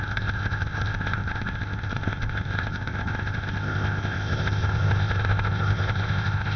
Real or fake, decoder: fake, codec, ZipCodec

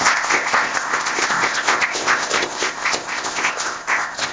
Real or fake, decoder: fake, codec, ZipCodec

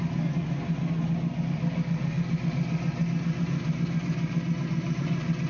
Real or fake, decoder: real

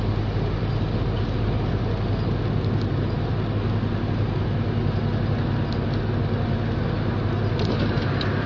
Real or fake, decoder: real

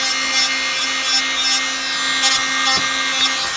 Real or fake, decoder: real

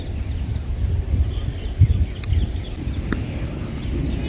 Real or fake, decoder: real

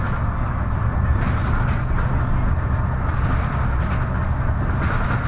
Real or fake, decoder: real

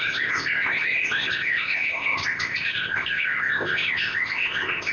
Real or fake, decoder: fake, codec, ZipCodec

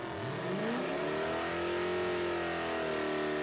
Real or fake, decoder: real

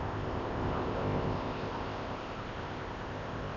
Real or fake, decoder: fake, codec, ZipCodec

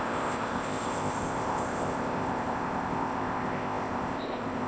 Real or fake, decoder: fake, codec, ZipCodec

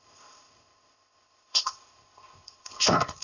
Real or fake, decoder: fake, codec, ZipCodec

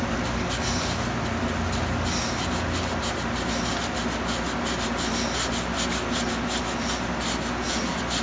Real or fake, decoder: real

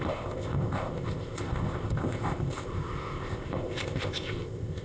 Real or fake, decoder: fake, codec, ZipCodec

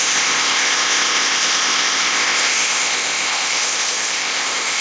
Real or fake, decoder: fake, codec, ZipCodec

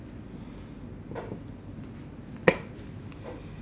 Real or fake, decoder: real